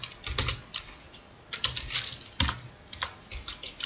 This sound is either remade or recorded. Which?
recorded